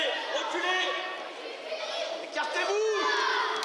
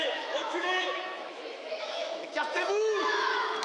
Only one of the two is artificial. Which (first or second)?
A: second